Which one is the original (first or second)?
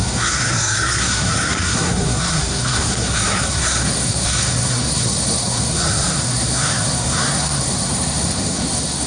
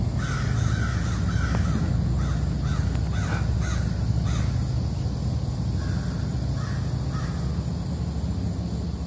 second